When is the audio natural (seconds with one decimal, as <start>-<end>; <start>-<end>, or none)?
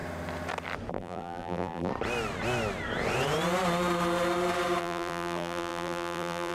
0.0-0.9; 1.9-4.8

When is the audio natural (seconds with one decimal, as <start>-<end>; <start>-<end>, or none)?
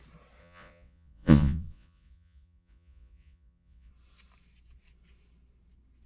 0.0-0.4; 3.9-6.1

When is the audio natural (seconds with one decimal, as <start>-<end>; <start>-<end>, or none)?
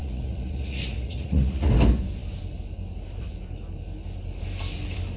1.7-5.2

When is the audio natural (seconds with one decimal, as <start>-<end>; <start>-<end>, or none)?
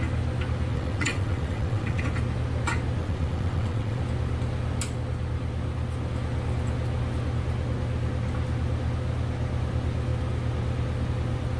0.0-0.7; 2.0-3.0; 4.0-11.6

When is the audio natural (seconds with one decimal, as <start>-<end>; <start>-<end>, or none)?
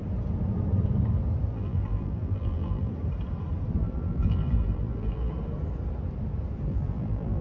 0.0-1.5; 2.9-3.8; 5.3-6.7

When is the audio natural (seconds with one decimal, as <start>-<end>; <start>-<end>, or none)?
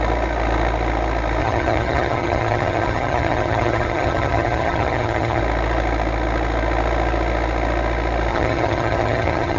0.0-1.4; 5.4-8.3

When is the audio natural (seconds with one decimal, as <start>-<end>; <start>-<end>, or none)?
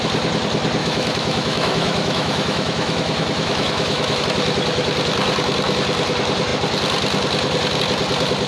0.0-0.8; 4.2-8.5